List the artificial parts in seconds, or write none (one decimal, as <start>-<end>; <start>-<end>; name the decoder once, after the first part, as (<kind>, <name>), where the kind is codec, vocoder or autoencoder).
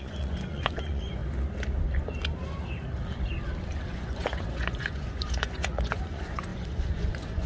0.0-1.2 (vocoder, Vocos); 3.8-7.5